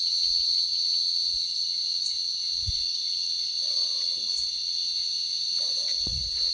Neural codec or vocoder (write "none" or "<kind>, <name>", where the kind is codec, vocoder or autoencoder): vocoder, WaveNeXt